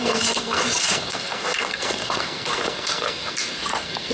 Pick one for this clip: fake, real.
fake